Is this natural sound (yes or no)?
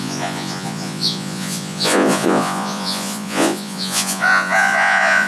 no